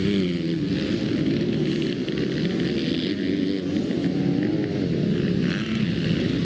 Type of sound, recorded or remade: recorded